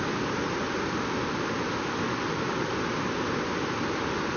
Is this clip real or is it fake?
real